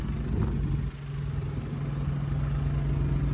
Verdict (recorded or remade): recorded